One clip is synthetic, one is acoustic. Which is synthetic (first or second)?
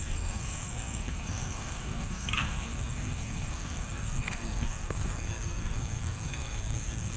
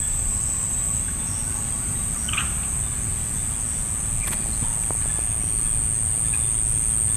first